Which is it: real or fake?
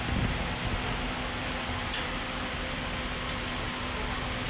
real